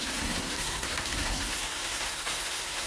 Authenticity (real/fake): fake